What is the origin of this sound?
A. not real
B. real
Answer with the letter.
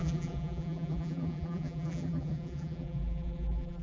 A